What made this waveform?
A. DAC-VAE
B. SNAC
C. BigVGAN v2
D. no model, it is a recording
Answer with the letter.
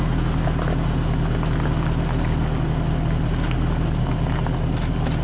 D